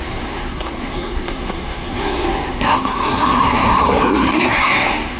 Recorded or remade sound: remade